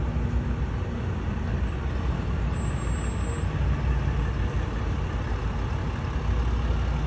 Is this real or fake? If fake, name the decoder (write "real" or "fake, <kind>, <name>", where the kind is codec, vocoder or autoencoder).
real